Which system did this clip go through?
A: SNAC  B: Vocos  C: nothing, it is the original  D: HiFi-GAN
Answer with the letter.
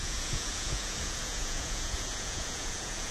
B